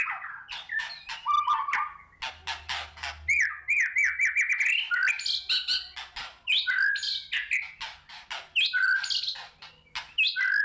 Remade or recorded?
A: recorded